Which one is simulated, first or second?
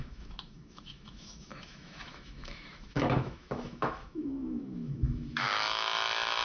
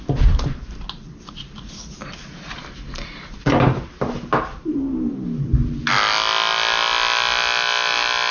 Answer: first